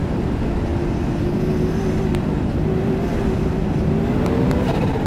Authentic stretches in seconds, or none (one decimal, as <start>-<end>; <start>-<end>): 0.0-5.1